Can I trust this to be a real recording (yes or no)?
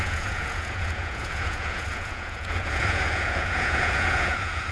no